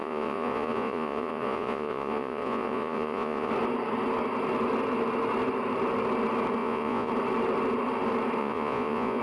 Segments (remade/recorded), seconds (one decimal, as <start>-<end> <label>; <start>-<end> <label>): 0.0-3.5 remade; 3.5-6.6 recorded; 6.6-7.1 remade; 7.1-8.4 recorded; 8.4-9.2 remade